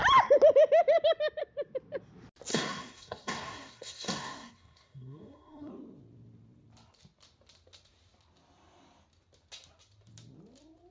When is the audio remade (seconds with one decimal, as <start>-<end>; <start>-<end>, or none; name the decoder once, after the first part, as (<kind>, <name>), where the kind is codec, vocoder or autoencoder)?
2.5-5.7 (codec, SNAC)